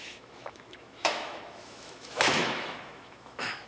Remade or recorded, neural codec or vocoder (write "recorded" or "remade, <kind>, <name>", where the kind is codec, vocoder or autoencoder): remade, autoencoder, DAC-VAE